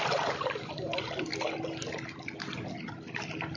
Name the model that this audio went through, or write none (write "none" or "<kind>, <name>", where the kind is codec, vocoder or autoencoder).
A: none